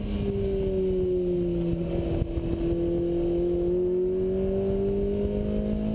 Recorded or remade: recorded